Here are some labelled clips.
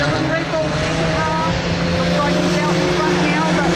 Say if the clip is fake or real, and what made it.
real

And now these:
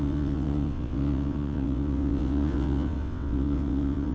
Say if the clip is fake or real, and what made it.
fake, vocoder, WaveNeXt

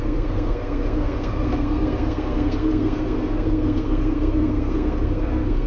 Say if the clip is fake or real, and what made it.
fake, codec, SNAC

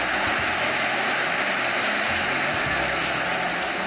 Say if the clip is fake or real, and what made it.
real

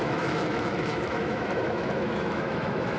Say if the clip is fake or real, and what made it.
fake, autoencoder, DAC-VAE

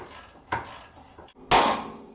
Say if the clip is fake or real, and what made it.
real